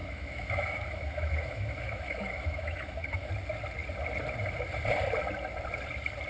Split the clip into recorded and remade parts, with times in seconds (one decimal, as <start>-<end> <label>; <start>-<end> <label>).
0.0-3.3 remade; 3.3-6.3 recorded